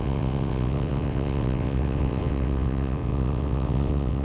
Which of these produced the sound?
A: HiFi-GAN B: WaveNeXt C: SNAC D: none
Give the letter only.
B